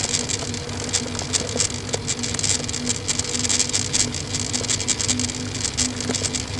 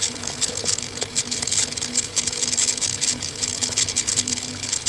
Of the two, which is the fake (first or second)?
second